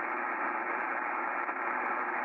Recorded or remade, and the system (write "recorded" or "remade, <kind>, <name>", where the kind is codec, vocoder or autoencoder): recorded